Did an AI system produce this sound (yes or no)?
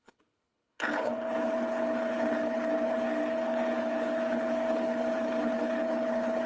yes